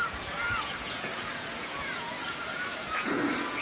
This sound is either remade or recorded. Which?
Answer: remade